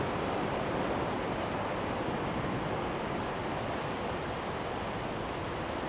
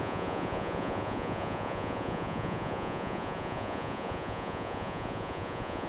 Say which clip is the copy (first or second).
second